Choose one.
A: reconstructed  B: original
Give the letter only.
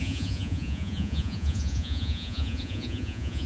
A